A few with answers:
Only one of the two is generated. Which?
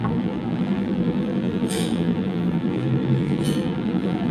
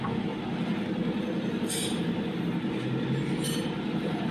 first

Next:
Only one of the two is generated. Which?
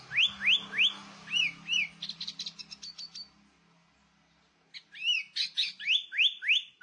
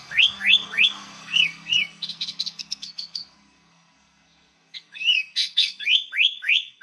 second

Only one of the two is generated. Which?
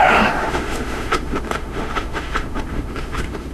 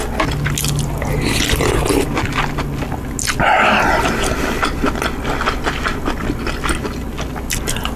first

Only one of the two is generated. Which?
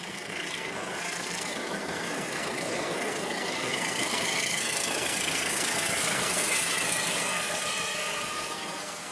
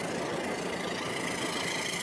first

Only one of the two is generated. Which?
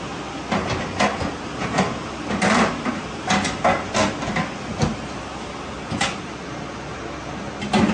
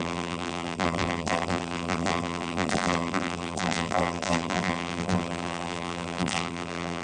second